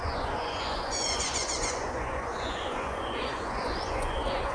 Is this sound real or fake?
fake